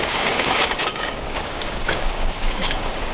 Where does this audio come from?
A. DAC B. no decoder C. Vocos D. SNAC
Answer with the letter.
A